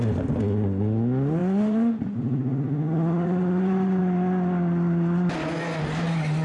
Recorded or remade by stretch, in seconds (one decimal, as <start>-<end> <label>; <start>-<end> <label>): 0.0-1.4 recorded; 1.4-4.0 remade; 4.0-6.4 recorded